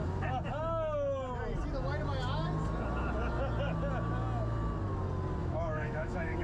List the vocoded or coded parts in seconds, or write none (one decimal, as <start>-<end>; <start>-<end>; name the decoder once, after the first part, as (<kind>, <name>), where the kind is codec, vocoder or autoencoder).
5.4-6.4 (autoencoder, DAC-VAE)